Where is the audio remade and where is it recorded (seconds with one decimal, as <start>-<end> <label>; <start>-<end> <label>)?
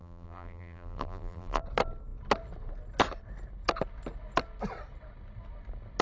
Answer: 0.0-1.6 remade; 1.6-6.0 recorded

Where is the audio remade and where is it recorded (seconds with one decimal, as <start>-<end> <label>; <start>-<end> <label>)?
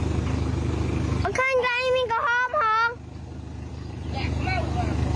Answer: 0.0-5.2 recorded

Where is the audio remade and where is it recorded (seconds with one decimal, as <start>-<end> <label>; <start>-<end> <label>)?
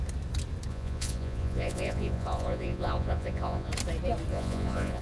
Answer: 0.0-0.7 recorded; 0.7-3.7 remade; 3.7-4.3 recorded; 4.3-5.0 remade